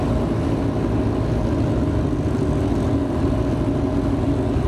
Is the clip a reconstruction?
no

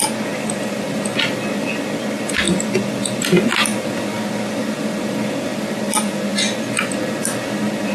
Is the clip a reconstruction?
no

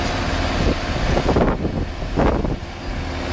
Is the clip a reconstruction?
no